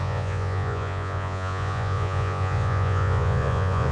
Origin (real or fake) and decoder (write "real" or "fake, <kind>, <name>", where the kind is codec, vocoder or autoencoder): fake, vocoder, Vocos